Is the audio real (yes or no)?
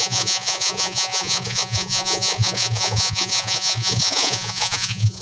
no